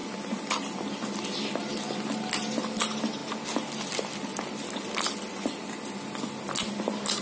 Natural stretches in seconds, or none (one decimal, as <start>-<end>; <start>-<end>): 0.0-7.2